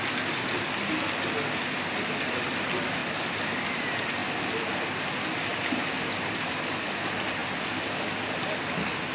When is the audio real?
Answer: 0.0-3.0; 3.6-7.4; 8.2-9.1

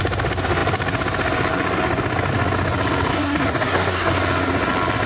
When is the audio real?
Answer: 0.0-3.1; 4.1-5.1

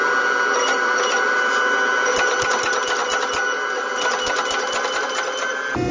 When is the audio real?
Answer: 0.0-5.9

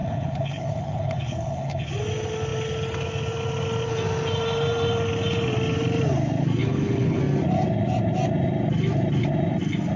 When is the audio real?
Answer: 1.9-6.6; 7.2-10.0

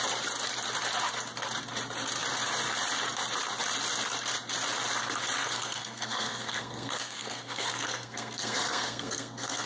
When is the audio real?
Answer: 0.0-5.4

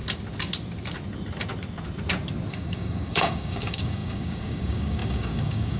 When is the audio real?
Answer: 0.0-2.5

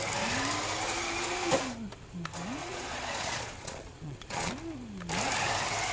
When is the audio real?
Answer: 0.0-2.6; 4.5-5.9

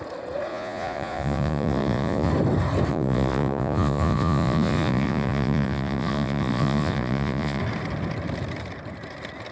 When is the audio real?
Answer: 0.0-0.5; 2.3-2.9; 7.6-9.5